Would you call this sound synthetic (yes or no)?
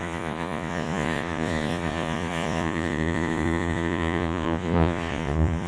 yes